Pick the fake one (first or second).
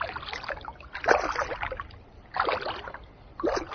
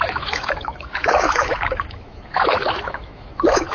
second